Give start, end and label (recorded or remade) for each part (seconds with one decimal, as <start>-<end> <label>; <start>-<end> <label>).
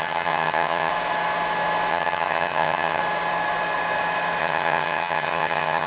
0.0-0.9 remade; 0.9-1.9 recorded; 1.9-3.0 remade; 3.0-4.4 recorded; 4.4-5.9 remade